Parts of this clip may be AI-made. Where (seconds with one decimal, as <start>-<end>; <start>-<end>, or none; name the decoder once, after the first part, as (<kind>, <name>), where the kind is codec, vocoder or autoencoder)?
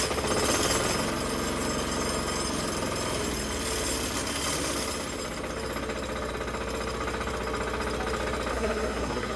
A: 8.5-9.4 (codec, SNAC)